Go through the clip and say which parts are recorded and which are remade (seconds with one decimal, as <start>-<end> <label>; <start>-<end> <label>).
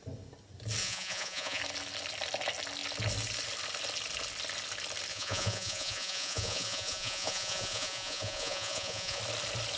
0.0-0.8 recorded; 0.8-1.6 remade; 1.6-5.1 recorded; 5.1-9.2 remade; 9.2-9.8 recorded